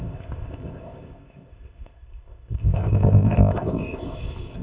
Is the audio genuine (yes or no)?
no